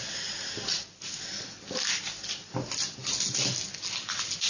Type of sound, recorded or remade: recorded